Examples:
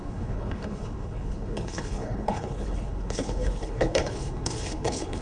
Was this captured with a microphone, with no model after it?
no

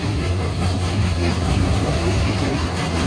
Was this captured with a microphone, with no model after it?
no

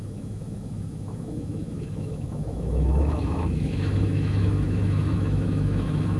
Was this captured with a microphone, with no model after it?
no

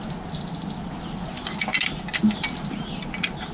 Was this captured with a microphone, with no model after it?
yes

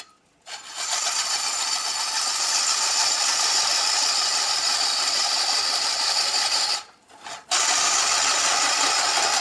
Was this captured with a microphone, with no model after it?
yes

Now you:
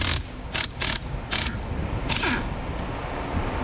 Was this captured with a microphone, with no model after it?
yes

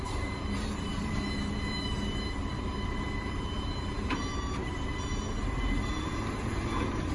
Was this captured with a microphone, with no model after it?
no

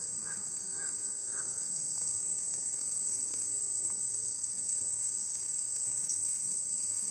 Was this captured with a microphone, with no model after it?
no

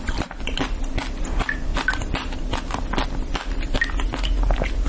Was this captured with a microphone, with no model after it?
yes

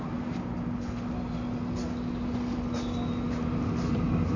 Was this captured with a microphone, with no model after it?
yes